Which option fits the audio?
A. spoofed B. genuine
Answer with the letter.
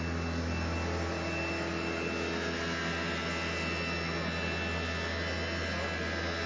B